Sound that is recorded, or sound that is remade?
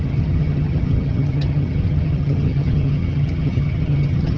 remade